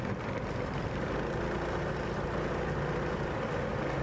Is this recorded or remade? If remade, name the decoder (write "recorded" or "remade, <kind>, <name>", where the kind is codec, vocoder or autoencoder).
recorded